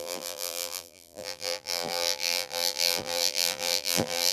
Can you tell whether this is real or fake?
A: fake